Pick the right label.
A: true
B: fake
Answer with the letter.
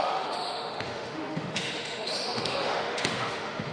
B